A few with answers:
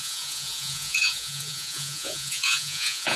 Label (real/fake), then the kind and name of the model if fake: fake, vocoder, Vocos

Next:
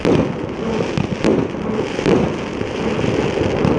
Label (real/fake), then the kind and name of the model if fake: real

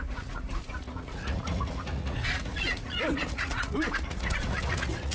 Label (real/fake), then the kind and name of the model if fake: fake, vocoder, Vocos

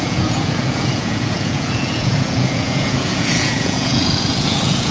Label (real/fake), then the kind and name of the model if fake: fake, vocoder, Vocos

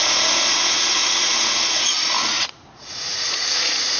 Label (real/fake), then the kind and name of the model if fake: fake, vocoder, Vocos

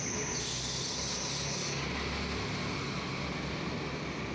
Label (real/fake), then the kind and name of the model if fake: real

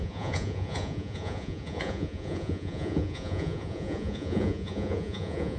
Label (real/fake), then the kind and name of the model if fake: fake, vocoder, Vocos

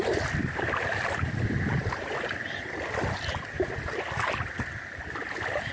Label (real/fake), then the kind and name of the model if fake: real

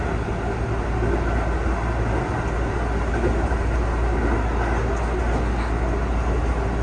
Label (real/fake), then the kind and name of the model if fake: real